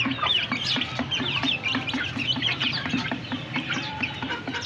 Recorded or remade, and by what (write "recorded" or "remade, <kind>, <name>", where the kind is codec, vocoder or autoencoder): remade, vocoder, BigVGAN v2